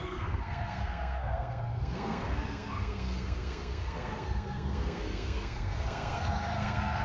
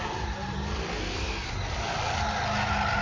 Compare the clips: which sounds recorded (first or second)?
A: second